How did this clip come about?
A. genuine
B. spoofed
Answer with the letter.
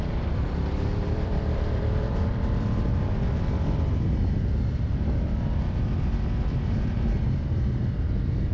B